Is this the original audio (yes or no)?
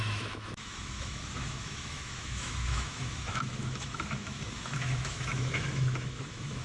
no